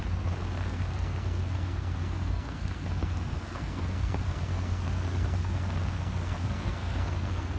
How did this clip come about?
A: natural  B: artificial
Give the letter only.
B